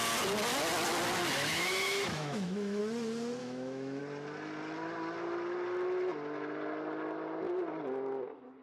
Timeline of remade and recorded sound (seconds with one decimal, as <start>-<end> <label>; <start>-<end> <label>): 0.0-1.5 recorded; 1.5-2.8 remade; 2.8-3.4 recorded; 3.4-4.0 remade; 4.0-8.6 recorded